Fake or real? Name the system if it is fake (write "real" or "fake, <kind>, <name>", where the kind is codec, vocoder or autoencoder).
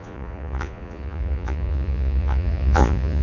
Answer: fake, vocoder, Vocos